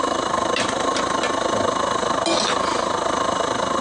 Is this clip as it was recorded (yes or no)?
yes